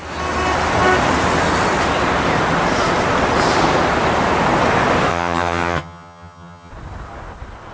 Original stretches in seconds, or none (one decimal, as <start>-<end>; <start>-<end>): 0.0-5.1; 6.7-7.7